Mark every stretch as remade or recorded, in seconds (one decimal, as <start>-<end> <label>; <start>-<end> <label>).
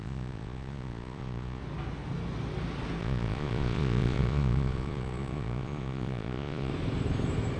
0.0-1.6 remade; 1.6-3.0 recorded; 3.0-6.7 remade; 6.7-7.6 recorded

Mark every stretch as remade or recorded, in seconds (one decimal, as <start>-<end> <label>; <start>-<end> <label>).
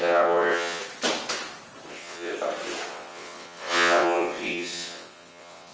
0.0-0.8 remade; 0.8-1.9 recorded; 1.9-2.3 remade; 2.3-2.9 recorded; 2.9-5.7 remade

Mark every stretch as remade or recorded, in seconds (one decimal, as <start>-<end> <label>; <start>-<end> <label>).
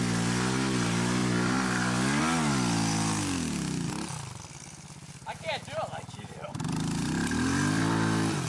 0.0-1.2 recorded; 1.2-2.2 remade; 2.2-5.2 recorded; 5.2-7.8 remade; 7.8-8.5 recorded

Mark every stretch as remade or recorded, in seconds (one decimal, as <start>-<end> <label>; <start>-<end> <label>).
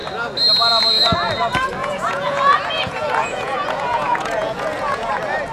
0.0-1.8 recorded; 1.8-5.1 remade; 5.1-5.5 recorded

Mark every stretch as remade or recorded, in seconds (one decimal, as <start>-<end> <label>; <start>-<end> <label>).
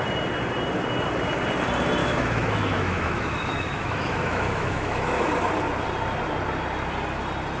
0.0-2.0 recorded; 2.0-5.3 remade; 5.3-7.6 recorded